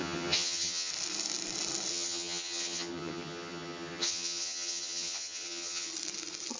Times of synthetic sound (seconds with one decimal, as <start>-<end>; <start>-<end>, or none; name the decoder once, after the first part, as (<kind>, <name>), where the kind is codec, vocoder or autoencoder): 0.0-0.9 (vocoder, HiFi-GAN); 1.9-5.9